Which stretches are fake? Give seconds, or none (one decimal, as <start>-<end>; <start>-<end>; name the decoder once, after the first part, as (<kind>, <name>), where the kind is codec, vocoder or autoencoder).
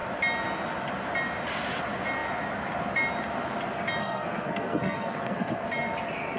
4.0-5.6 (codec, SNAC)